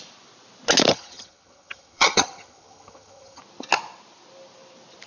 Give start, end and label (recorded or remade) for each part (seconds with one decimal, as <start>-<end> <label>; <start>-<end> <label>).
0.0-0.9 recorded; 0.9-3.4 remade; 3.4-5.1 recorded